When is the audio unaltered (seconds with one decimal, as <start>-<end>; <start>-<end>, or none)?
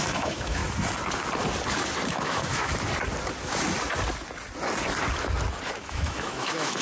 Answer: 0.6-2.1; 2.7-5.8